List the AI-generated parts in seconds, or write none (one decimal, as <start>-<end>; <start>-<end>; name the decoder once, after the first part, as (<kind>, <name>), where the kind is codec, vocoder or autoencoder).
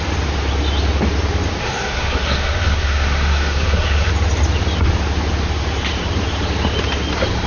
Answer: 1.6-4.1 (codec, SNAC)